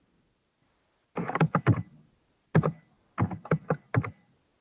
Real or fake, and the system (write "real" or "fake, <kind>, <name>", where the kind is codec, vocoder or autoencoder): real